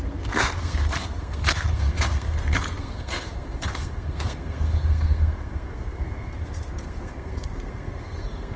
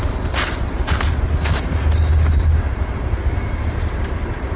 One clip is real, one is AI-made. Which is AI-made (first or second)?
first